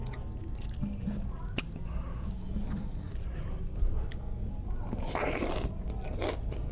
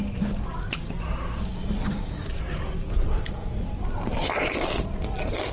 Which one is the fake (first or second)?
second